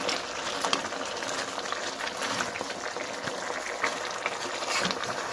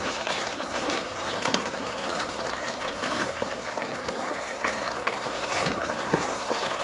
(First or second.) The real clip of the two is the first